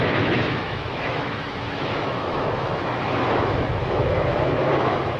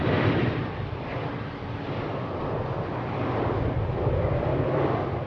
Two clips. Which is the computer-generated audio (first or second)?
first